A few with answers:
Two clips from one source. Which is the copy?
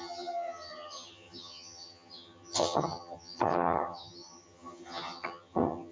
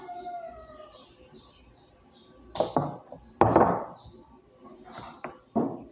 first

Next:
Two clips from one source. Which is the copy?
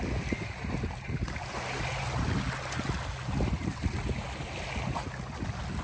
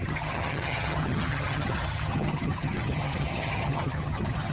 second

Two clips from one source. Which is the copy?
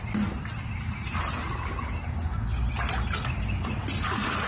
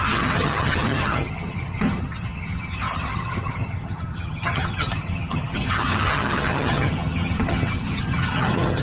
second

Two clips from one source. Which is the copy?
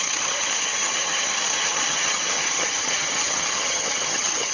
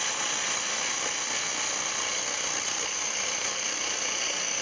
first